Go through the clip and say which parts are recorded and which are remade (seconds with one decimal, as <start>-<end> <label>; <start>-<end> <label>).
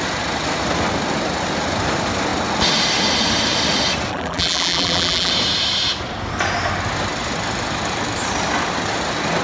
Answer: 0.0-4.1 recorded; 4.1-5.3 remade; 5.3-9.4 recorded